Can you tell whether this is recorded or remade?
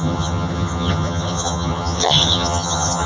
remade